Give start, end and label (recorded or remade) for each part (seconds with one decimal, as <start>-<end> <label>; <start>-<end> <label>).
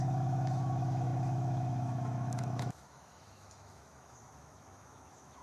0.0-5.4 remade